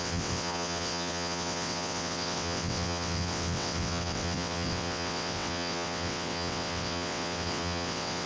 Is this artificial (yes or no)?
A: yes